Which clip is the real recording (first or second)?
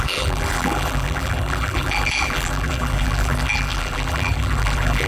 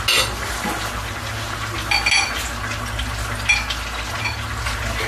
second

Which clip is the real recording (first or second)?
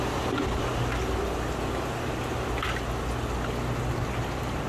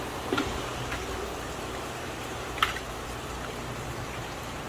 first